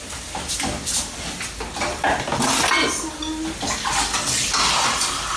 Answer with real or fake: real